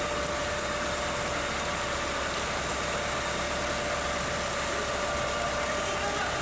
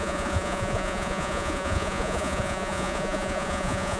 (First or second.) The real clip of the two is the first